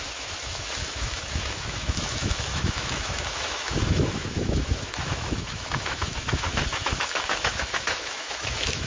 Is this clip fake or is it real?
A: fake